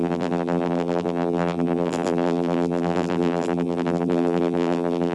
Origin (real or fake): fake